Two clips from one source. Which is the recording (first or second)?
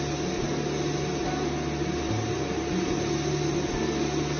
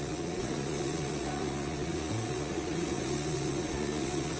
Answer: first